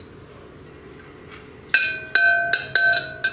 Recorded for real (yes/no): yes